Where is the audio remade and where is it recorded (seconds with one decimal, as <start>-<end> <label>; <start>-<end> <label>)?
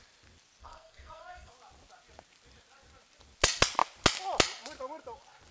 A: 0.0-0.6 recorded; 0.6-1.5 remade; 1.5-5.5 recorded